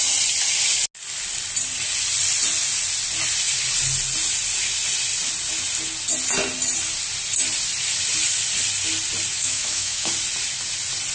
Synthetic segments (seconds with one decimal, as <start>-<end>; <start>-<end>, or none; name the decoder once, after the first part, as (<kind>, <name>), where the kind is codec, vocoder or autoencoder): 9.3-10.1 (autoencoder, DAC-VAE)